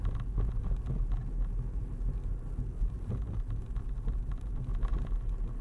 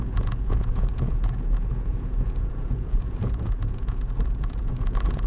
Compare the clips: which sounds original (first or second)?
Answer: first